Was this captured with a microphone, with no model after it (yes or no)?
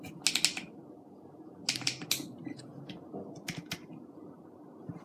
yes